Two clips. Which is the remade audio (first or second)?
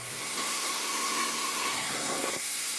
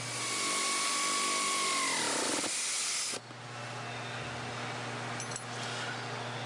first